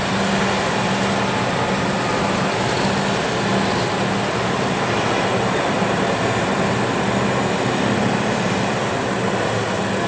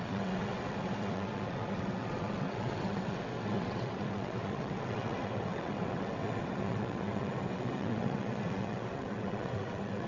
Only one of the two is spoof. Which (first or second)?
second